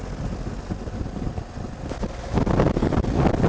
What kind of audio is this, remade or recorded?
recorded